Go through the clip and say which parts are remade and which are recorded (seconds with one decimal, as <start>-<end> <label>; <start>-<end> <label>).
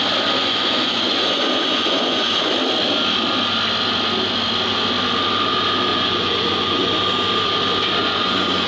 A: 0.0-0.4 recorded; 0.4-2.5 remade; 2.5-5.9 recorded; 5.9-6.9 remade; 6.9-8.0 recorded; 8.0-8.7 remade